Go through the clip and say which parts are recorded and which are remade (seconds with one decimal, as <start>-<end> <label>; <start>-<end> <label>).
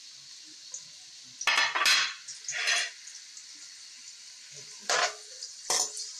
0.0-2.3 recorded; 2.3-6.2 remade